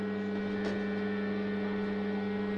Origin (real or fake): real